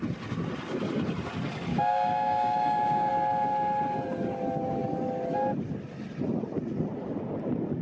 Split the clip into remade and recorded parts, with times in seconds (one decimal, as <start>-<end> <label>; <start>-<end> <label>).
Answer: 0.0-1.7 recorded; 1.7-3.1 remade; 3.1-7.8 recorded